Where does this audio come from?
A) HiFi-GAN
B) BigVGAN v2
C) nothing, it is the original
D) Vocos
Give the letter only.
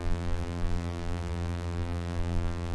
B